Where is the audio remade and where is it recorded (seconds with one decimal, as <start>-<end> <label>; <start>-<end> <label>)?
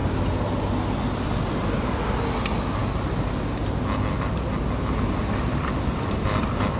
0.0-6.8 recorded